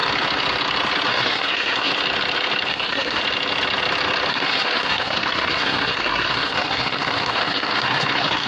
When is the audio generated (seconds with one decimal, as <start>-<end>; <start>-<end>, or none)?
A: 1.1-1.9; 2.7-3.2; 4.3-8.5